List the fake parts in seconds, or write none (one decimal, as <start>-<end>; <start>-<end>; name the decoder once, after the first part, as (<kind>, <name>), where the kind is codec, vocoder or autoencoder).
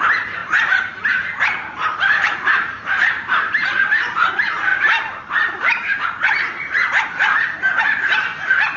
0.0-4.7 (vocoder, BigVGAN v2); 7.8-8.3